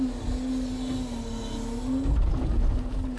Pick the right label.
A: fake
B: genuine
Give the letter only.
B